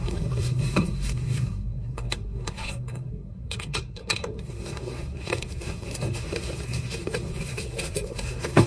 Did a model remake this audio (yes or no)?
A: yes